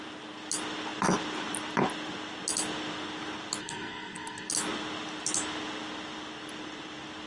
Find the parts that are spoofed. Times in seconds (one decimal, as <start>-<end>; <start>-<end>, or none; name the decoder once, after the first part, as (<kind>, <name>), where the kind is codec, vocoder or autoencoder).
3.6-4.5 (codec, SNAC)